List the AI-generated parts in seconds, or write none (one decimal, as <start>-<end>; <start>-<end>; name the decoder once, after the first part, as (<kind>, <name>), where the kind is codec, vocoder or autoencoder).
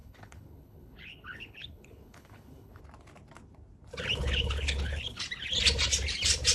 0.0-2.8 (codec, HILCodec); 4.2-5.2